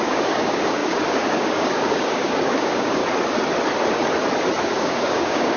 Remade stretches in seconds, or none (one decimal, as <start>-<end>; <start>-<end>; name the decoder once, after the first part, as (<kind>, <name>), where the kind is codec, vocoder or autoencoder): 0.0-3.0 (codec, DAC); 4.6-5.6